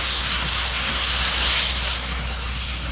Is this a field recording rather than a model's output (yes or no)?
no